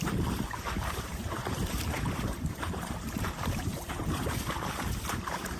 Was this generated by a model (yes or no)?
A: yes